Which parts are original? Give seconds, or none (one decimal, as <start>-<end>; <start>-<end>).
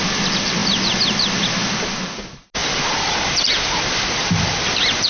0.0-5.1